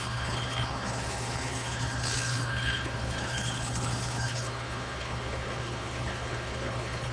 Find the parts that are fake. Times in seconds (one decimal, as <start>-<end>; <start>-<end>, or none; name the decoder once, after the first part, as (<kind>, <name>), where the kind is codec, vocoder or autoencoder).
0.0-7.1 (codec, HILCodec)